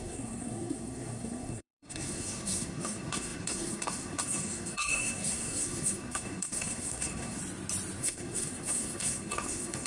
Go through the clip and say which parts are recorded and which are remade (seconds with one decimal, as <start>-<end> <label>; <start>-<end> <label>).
0.0-7.4 remade; 7.4-8.0 recorded; 8.0-9.9 remade